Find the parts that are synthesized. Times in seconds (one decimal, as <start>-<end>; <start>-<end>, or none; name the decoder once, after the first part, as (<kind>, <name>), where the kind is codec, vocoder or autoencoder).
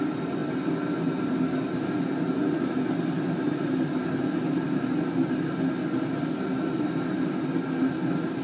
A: none